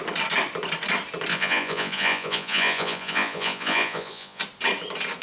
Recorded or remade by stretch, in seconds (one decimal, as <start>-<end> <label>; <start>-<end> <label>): 0.0-1.3 recorded; 1.3-4.4 remade; 4.4-5.2 recorded